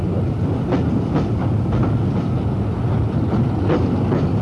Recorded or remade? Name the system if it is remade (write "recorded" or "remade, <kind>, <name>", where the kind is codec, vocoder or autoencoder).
recorded